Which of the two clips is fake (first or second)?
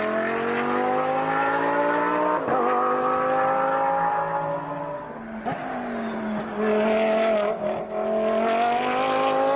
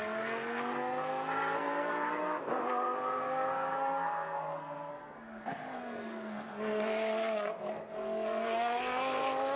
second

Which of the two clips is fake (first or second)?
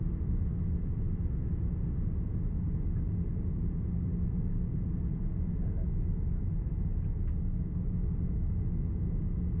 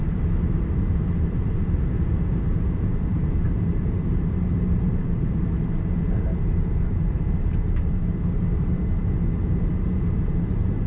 second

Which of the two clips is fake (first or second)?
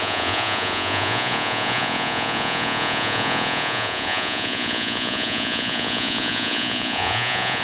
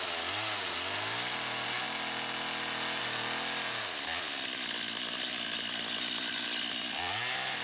first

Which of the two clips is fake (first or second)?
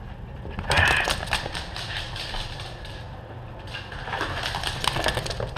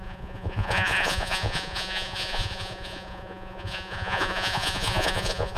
second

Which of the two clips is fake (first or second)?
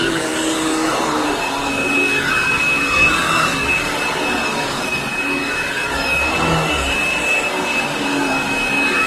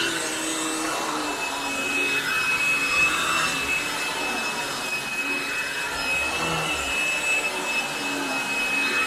first